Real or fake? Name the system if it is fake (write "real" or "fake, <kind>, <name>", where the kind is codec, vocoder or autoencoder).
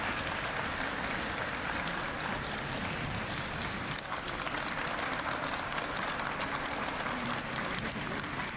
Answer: fake, vocoder, BigVGAN v2